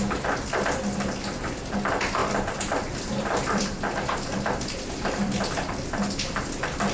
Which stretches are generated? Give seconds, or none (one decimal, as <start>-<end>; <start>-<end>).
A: 2.2-5.4